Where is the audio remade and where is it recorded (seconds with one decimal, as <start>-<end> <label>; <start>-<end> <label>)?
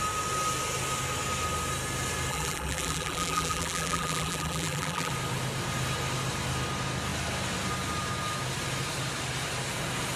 0.0-2.3 recorded; 2.3-5.1 remade; 5.1-10.2 recorded